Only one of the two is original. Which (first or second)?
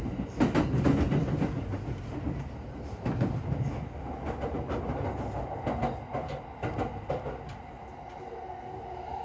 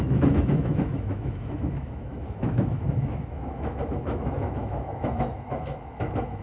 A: first